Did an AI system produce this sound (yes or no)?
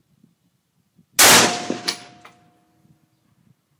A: no